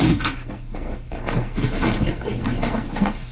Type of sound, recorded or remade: remade